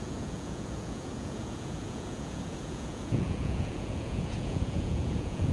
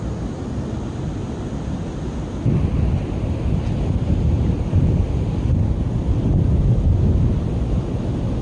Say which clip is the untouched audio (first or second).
second